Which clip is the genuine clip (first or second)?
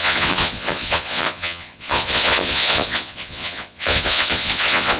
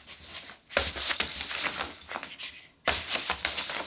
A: second